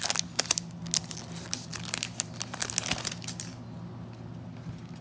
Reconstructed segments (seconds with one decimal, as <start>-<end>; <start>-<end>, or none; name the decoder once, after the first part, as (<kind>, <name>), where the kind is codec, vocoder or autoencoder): none